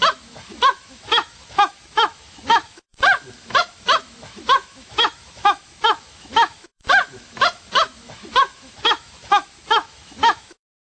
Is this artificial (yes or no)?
yes